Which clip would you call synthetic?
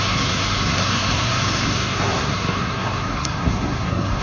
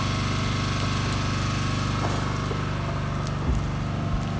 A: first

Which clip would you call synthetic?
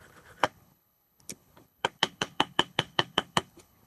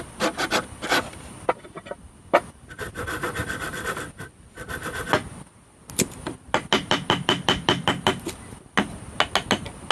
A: first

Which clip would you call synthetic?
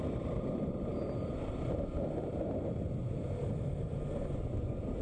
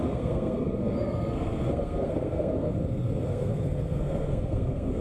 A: second